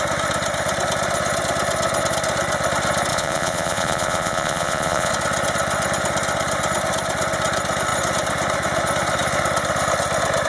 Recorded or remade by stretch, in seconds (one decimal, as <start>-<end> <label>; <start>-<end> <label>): 0.0-3.1 recorded; 3.1-5.1 remade; 5.1-10.5 recorded